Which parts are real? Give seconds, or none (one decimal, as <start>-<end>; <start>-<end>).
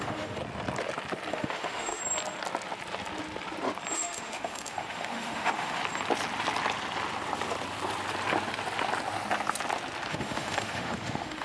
0.4-1.3; 2.0-3.9; 5.8-10.1